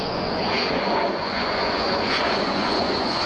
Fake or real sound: fake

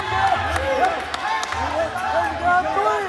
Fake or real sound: real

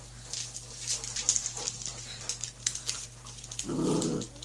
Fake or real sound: real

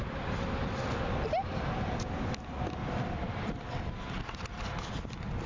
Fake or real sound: real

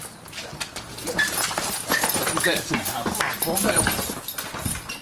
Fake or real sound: real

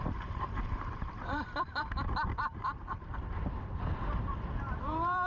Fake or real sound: fake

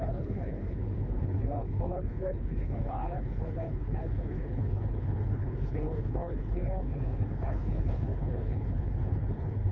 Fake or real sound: fake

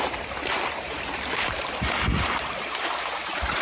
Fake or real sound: fake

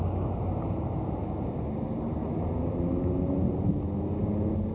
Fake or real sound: real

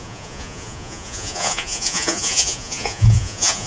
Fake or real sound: fake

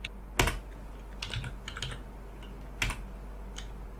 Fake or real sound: real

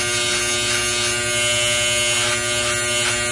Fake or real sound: real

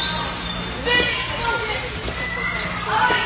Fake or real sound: real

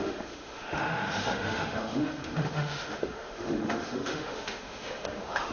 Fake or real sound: fake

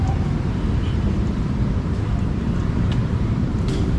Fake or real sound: fake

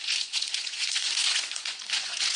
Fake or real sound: fake